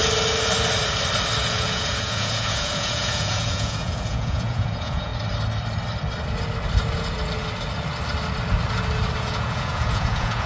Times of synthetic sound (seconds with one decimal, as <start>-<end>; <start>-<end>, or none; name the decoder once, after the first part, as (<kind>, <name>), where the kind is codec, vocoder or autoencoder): 1.4-5.1 (vocoder, Vocos); 9.2-10.5